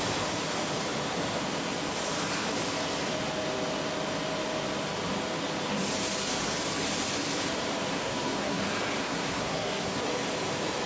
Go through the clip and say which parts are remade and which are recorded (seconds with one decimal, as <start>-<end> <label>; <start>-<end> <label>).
0.0-7.9 recorded; 7.9-8.6 remade; 8.6-9.0 recorded; 9.0-10.0 remade; 10.0-10.9 recorded